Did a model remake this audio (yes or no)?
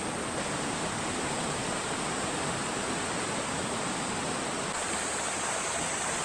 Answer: no